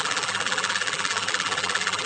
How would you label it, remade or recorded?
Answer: remade